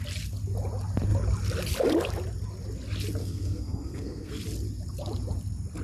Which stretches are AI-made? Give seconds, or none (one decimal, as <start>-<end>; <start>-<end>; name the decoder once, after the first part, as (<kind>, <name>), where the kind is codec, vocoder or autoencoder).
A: 3.2-4.3 (codec, SNAC)